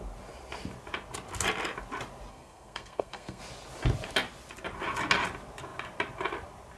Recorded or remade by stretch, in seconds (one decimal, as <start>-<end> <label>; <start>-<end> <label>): 0.0-2.3 recorded; 2.3-3.4 remade; 3.4-6.8 recorded